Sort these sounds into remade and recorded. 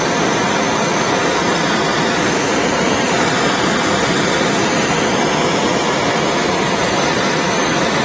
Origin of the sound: remade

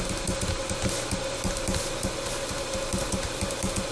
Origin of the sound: recorded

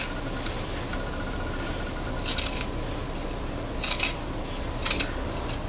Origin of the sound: recorded